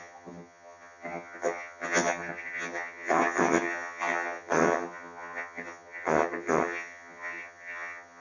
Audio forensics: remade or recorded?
remade